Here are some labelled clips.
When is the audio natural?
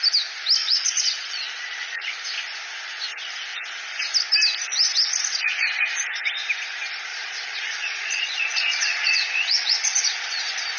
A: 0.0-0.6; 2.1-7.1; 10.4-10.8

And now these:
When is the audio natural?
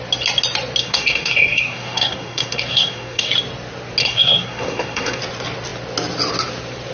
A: 0.0-0.8; 3.3-4.0; 5.2-6.9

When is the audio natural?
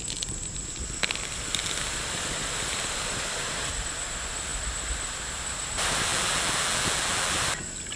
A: 0.0-6.1; 7.4-8.0